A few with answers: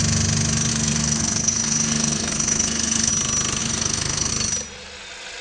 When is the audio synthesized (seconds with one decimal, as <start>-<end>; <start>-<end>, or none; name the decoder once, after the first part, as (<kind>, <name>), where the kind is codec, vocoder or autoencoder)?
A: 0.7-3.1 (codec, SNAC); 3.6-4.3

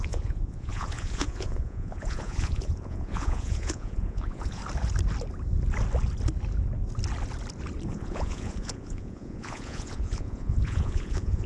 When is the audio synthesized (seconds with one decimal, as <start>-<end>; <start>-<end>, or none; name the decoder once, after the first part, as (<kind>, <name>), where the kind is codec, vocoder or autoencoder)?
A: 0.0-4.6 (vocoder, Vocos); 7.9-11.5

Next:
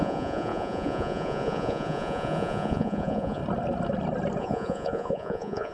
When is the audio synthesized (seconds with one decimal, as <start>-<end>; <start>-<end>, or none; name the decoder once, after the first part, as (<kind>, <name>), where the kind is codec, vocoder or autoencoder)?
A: 0.0-3.4 (vocoder, Vocos); 4.4-5.7

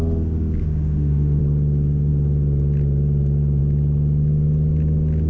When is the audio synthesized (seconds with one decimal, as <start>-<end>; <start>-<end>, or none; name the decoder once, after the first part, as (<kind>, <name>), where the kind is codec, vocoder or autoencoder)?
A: 0.6-1.4 (autoencoder, DAC-VAE)